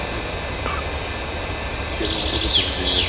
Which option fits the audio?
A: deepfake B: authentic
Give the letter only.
B